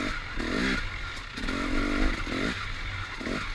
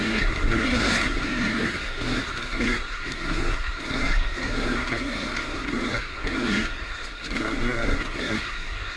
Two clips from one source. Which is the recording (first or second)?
first